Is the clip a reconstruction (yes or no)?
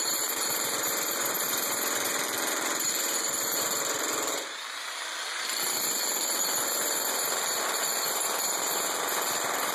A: yes